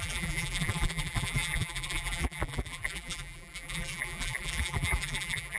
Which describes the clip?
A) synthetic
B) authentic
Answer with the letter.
A